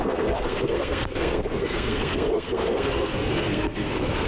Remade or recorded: remade